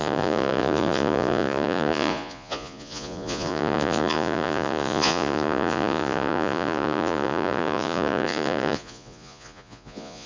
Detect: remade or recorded remade